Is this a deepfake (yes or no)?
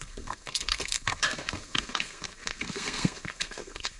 yes